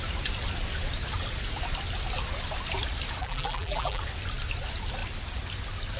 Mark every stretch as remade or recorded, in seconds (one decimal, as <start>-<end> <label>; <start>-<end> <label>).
0.0-3.2 recorded; 3.2-4.0 remade; 4.0-6.0 recorded